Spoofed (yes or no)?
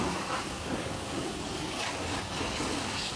yes